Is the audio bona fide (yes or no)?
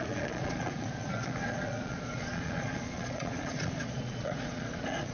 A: no